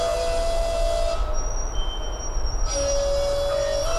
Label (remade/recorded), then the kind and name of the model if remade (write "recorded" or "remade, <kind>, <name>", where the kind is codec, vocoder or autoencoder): recorded